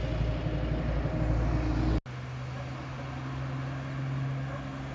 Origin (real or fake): real